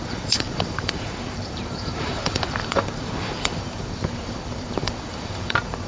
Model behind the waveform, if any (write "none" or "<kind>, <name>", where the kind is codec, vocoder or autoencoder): vocoder, BigVGAN v2